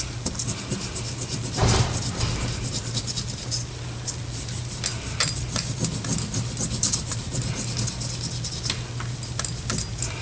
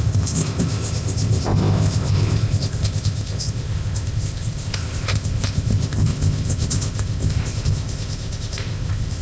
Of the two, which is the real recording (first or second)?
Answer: first